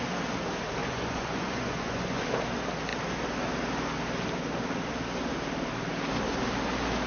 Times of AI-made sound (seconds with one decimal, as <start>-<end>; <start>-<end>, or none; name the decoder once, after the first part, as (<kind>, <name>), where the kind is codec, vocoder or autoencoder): 0.8-2.2 (vocoder, Vocos)